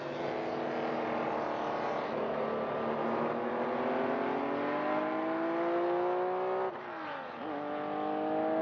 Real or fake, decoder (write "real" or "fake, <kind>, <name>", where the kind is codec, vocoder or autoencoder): real